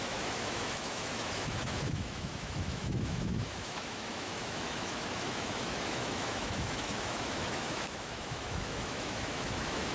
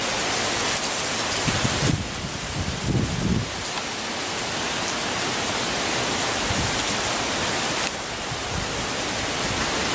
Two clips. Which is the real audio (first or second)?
second